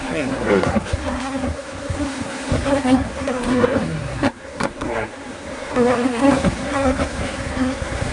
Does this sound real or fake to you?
fake